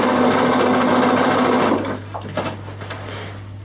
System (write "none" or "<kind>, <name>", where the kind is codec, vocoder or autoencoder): none